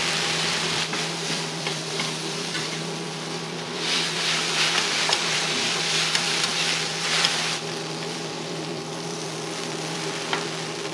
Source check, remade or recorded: remade